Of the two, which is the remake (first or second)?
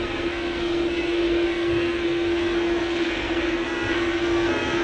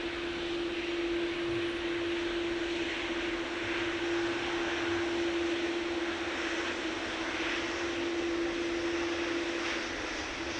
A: first